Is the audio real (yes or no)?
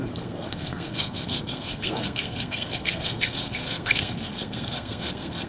no